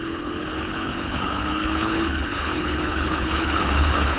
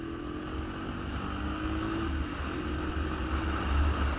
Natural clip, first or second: second